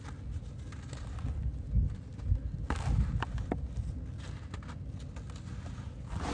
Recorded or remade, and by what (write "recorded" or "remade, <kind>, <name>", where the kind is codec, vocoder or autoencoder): recorded